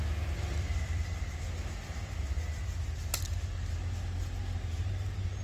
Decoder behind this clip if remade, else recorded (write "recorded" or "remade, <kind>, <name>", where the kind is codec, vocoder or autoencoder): recorded